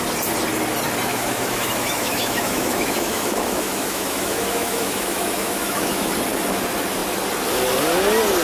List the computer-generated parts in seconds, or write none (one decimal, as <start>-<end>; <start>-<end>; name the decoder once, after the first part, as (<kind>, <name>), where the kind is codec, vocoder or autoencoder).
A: 1.1-6.1 (autoencoder, DAC-VAE)